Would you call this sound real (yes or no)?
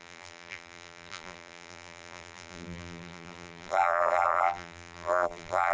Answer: no